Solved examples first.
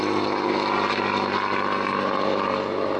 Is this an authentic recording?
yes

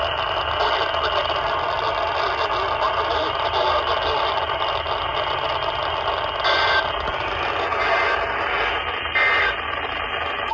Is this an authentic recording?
yes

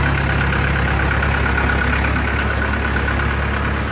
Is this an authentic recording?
yes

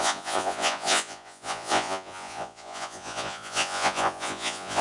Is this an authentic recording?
no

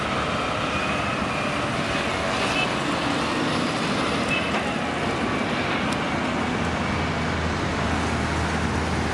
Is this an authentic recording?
yes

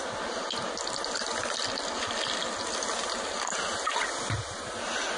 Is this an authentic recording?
yes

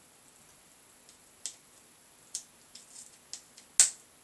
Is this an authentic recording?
yes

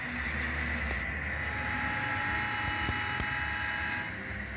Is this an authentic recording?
yes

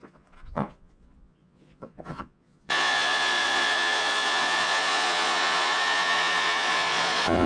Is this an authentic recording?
no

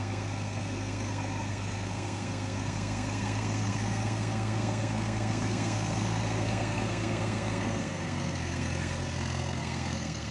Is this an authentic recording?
no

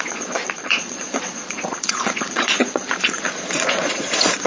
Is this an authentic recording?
no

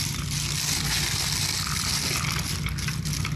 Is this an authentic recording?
yes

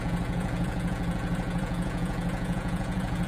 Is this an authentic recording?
no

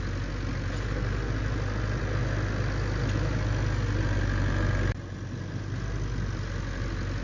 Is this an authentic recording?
yes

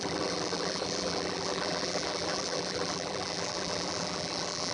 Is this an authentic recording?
no